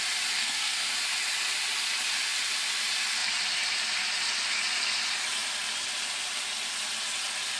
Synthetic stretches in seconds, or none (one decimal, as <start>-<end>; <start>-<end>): 0.4-0.9